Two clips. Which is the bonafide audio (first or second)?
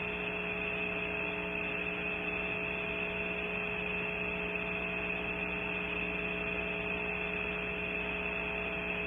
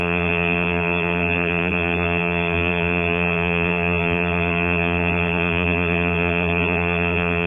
first